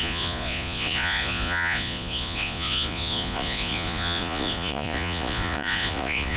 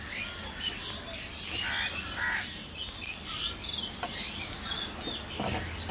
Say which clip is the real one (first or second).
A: second